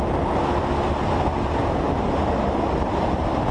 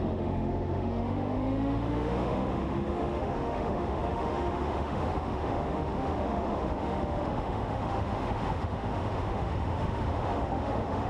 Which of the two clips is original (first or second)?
first